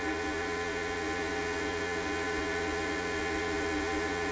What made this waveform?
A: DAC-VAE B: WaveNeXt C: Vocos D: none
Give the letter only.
C